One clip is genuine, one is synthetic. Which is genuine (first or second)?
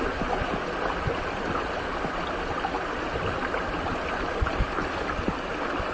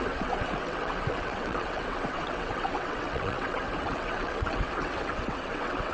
first